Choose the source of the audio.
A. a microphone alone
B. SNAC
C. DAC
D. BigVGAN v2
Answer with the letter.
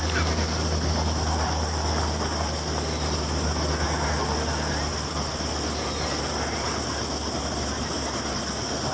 A